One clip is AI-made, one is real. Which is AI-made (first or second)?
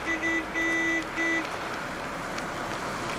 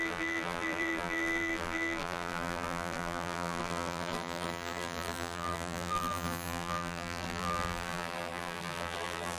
second